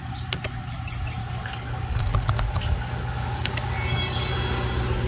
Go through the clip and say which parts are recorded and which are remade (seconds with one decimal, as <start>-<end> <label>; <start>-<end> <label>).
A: 0.0-1.2 recorded; 1.2-4.3 remade; 4.3-5.1 recorded